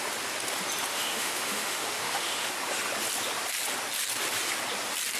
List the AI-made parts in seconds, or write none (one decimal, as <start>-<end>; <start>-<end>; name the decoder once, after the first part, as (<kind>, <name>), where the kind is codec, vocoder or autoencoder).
0.9-2.5 (autoencoder, DAC-VAE)